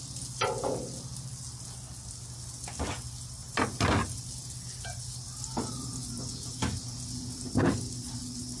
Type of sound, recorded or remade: recorded